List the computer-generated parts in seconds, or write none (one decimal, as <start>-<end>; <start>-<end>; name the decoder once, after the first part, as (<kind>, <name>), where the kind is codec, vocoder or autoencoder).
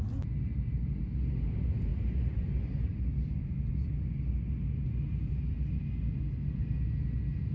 1.9-2.6 (vocoder, BigVGAN v2); 3.1-3.7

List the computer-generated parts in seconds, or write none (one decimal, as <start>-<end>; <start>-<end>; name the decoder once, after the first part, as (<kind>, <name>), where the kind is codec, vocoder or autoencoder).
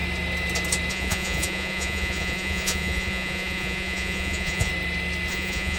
0.9-4.7 (vocoder, Vocos); 5.3-5.8